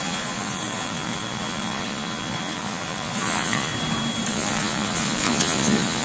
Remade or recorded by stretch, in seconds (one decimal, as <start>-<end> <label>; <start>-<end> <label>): 0.0-3.7 remade; 3.7-4.3 recorded; 4.3-6.0 remade